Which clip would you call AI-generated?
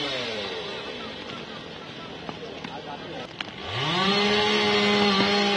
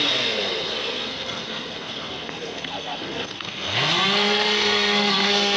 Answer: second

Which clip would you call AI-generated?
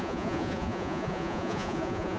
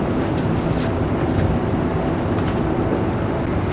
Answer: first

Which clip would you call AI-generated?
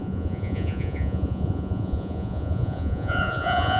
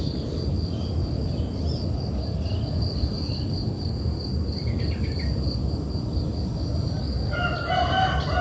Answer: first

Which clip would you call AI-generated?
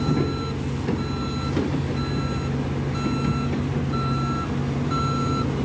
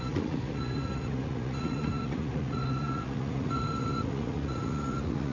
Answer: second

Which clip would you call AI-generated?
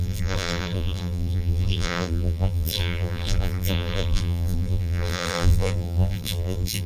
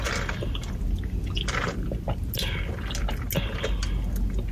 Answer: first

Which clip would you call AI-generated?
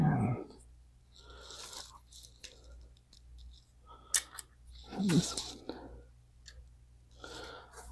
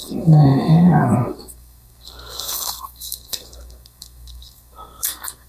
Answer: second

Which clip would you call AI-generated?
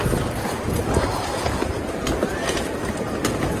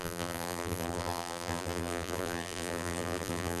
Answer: second